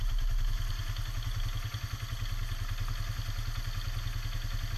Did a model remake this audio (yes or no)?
no